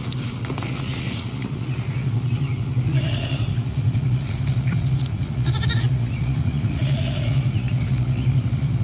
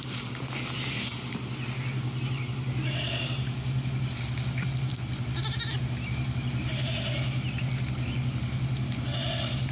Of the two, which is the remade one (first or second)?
first